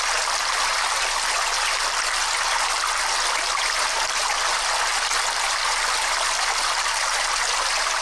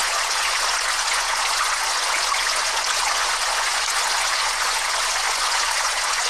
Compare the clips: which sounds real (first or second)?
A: first